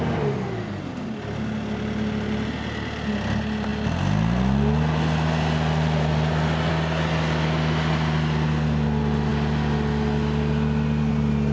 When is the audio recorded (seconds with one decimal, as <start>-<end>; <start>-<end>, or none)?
0.0-11.5